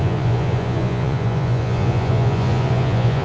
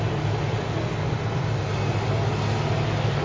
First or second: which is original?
second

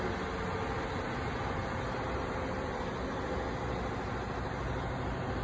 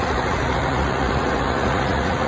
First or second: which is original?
first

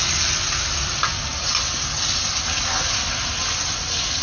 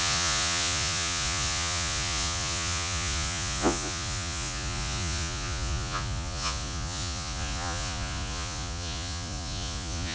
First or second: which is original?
first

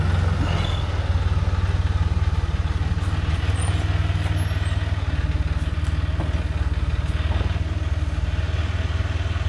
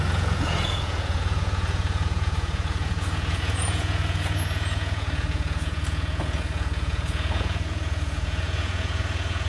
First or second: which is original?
first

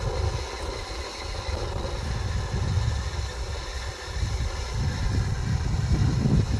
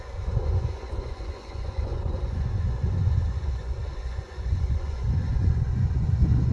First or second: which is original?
first